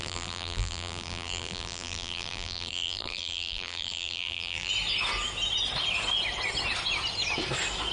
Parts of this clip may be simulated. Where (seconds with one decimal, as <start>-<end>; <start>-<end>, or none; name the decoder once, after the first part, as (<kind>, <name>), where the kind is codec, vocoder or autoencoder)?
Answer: 0.0-4.7 (vocoder, BigVGAN v2)

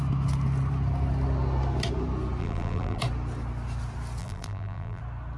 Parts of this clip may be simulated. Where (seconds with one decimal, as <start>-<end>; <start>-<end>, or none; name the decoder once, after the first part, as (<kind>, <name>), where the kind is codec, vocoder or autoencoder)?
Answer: 2.4-3.0 (vocoder, BigVGAN v2); 4.2-5.0

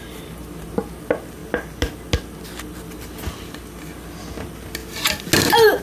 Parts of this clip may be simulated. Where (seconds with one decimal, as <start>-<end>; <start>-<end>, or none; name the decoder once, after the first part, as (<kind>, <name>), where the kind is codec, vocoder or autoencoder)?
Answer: none

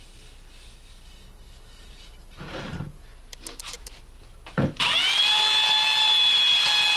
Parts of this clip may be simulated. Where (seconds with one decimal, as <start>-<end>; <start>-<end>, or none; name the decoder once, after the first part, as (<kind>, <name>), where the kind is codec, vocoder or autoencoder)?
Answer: none

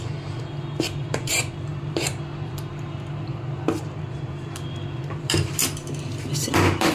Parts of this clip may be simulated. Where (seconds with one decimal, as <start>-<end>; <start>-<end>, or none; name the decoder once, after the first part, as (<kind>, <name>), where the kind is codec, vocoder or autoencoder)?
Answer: 0.0-5.6 (vocoder, BigVGAN v2); 6.5-6.9

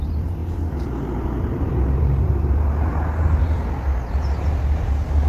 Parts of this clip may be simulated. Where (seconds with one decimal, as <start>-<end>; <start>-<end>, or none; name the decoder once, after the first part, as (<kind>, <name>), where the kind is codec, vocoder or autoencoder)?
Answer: none

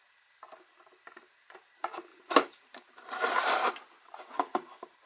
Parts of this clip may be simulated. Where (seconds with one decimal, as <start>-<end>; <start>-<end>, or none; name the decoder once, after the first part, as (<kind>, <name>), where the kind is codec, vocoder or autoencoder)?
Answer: 2.1-3.7 (vocoder, BigVGAN v2)